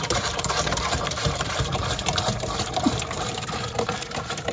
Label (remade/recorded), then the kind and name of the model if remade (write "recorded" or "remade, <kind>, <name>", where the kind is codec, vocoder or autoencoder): remade, vocoder, BigVGAN v2